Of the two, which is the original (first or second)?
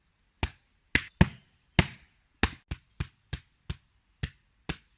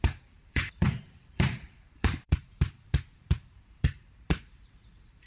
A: first